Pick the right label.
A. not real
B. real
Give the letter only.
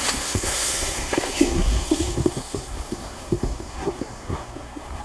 A